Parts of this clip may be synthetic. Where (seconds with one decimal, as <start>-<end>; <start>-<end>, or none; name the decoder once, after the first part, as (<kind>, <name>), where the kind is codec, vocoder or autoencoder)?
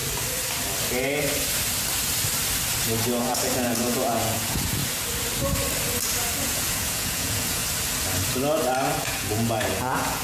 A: 3.2-4.8 (vocoder, Vocos); 6.4-7.6; 8.9-10.2